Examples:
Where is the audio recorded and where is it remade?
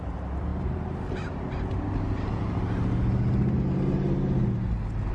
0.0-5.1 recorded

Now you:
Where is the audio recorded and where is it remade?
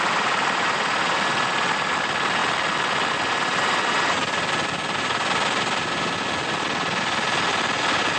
0.0-8.2 recorded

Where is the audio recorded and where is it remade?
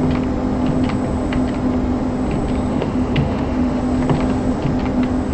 0.0-2.7 recorded; 2.7-3.8 remade; 3.8-5.3 recorded